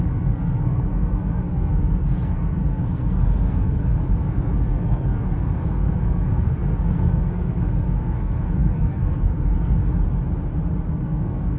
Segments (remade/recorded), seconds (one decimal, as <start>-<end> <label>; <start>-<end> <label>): 0.0-9.8 remade; 9.8-10.9 recorded; 10.9-11.6 remade